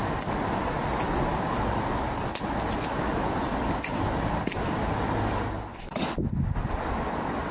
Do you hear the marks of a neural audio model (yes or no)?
no